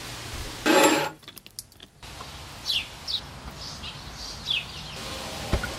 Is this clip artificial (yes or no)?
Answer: no